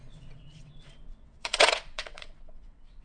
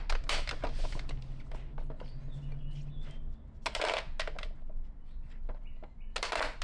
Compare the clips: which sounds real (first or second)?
second